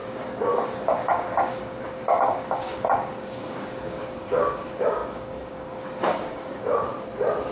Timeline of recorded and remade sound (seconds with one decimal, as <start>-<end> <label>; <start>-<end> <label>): 0.0-6.9 remade; 6.9-7.5 recorded